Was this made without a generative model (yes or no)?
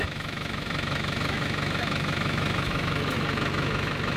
no